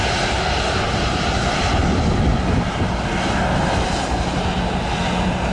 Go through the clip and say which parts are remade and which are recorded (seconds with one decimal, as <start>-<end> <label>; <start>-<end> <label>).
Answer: 0.0-1.7 remade; 1.7-5.0 recorded; 5.0-5.5 remade